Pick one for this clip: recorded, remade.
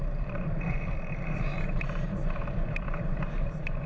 remade